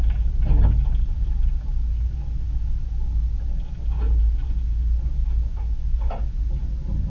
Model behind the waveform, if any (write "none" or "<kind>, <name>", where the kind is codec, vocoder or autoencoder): none